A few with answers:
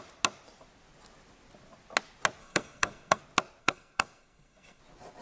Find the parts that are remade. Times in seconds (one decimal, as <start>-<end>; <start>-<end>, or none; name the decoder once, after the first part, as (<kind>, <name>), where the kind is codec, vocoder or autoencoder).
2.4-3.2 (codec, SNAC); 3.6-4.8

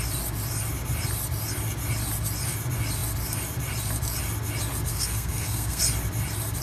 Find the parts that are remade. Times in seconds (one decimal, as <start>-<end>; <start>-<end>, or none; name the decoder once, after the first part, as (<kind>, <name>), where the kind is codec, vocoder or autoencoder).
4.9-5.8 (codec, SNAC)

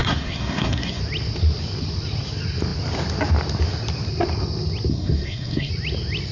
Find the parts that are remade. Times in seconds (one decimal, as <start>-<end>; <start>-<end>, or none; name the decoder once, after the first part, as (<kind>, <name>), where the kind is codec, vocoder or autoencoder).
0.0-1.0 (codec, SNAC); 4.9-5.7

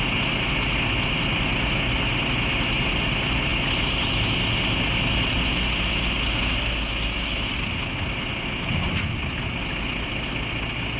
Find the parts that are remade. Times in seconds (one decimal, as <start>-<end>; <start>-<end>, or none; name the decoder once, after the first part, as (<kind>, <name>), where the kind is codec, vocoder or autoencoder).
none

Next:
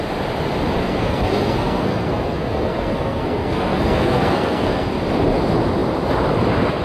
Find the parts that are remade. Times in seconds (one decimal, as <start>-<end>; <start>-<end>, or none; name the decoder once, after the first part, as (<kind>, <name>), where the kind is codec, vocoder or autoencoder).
0.8-4.9 (codec, SNAC)